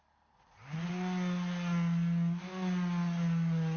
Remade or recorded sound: recorded